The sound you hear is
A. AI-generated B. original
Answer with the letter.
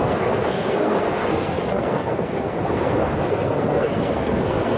A